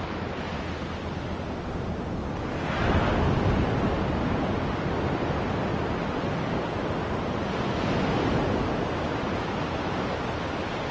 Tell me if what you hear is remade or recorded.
recorded